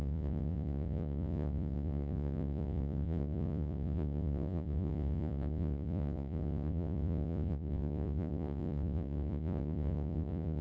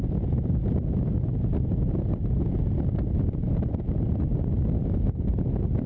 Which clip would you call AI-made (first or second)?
first